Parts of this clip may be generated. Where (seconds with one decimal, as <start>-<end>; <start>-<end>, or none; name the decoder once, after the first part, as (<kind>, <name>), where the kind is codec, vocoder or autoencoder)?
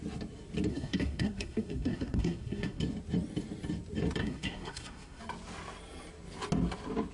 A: 0.7-2.8 (codec, SNAC); 4.2-5.2